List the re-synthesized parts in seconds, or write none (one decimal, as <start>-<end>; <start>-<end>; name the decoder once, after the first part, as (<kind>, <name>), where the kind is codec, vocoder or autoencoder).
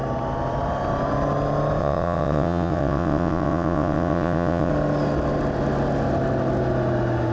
1.8-4.7 (vocoder, WaveNeXt)